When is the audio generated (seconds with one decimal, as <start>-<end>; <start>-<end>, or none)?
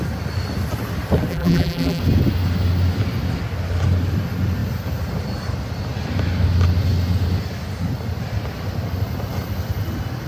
1.3-2.0